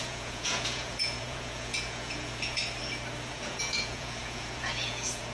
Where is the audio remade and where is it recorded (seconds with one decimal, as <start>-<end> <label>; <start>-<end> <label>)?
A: 0.0-2.6 remade; 2.6-3.3 recorded; 3.3-5.3 remade